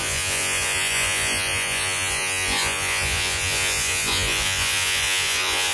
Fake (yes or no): yes